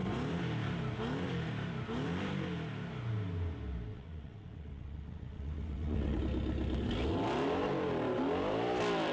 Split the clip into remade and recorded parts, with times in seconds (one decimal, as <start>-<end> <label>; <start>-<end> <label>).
0.0-3.9 recorded; 3.9-6.2 remade; 6.2-9.1 recorded